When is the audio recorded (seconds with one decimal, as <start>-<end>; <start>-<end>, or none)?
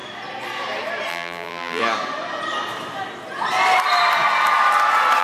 0.0-1.1; 1.8-5.2